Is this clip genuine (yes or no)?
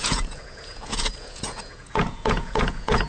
no